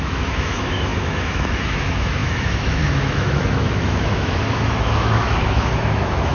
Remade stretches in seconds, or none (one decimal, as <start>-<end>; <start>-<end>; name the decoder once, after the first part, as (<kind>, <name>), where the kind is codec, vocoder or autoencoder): 0.0-6.3 (autoencoder, DAC-VAE)